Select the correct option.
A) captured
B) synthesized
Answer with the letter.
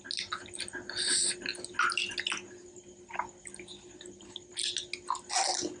A